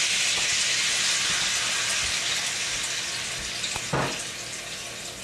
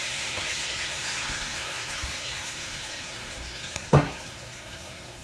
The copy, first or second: second